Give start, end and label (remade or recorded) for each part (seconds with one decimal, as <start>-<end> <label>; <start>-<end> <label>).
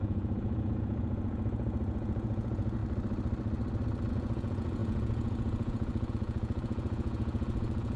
0.0-2.8 remade; 2.8-4.1 recorded; 4.1-8.0 remade